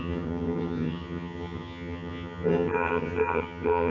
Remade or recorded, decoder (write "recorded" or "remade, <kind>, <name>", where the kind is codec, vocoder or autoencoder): remade, vocoder, HiFi-GAN